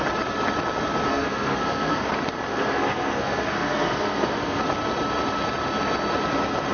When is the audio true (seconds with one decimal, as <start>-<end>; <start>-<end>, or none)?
0.0-1.1; 2.1-2.5; 4.6-6.7